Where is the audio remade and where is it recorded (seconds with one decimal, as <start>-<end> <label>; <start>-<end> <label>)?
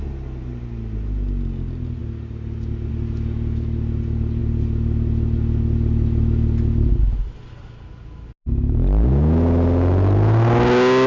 0.0-11.1 recorded